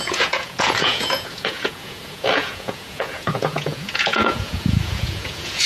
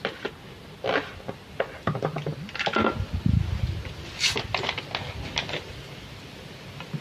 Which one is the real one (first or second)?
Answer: second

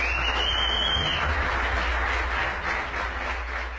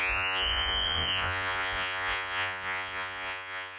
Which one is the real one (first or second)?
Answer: first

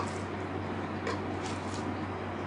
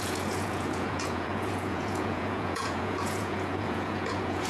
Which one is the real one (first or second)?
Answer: first